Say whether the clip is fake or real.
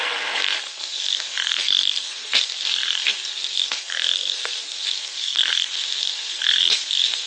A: fake